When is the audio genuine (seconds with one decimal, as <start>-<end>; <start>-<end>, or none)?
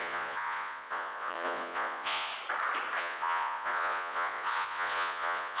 2.3-3.0